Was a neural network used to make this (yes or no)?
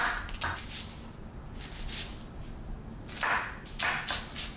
no